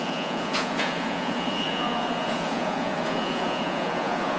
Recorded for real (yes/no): no